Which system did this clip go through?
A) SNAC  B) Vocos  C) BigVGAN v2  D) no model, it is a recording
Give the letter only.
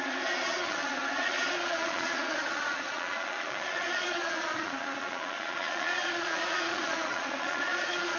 B